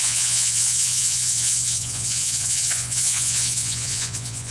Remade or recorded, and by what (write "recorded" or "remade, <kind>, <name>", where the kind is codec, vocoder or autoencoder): remade, vocoder, Vocos